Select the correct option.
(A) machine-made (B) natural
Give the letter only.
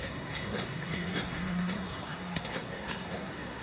A